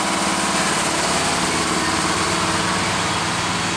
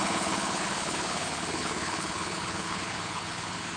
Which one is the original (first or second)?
first